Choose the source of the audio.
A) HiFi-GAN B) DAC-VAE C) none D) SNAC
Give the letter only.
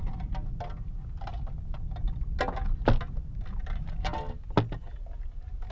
C